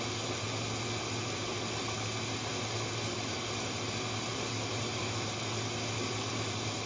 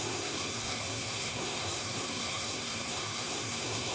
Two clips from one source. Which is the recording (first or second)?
first